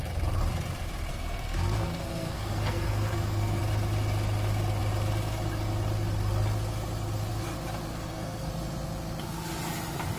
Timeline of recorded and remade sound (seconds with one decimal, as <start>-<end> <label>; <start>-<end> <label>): 0.0-1.1 recorded; 1.1-3.6 remade; 3.6-7.9 recorded; 7.9-8.5 remade; 8.5-10.2 recorded

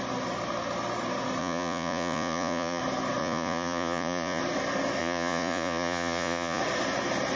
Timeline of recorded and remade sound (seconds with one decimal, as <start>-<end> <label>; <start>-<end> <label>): 0.0-1.4 recorded; 1.4-2.8 remade; 2.8-3.2 recorded; 3.2-4.4 remade; 4.4-5.0 recorded; 5.0-6.6 remade; 6.6-7.4 recorded

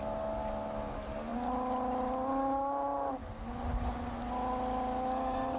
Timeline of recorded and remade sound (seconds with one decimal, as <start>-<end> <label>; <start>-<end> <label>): 0.0-5.6 recorded

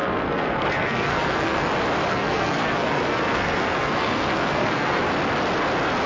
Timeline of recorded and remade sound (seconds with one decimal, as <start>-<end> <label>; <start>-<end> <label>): 0.0-1.7 remade; 1.7-2.1 recorded; 2.1-5.0 remade; 5.0-6.1 recorded